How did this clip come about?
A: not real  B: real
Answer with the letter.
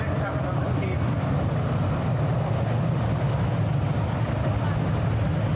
B